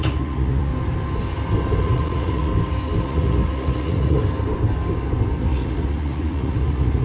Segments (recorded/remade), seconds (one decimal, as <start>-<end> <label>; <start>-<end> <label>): 0.0-0.7 remade; 0.7-1.8 recorded; 1.8-2.5 remade; 2.5-3.0 recorded; 3.0-4.2 remade; 4.2-5.4 recorded; 5.4-7.0 remade